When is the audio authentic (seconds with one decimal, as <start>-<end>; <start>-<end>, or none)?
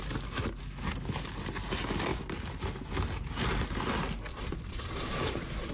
0.0-4.3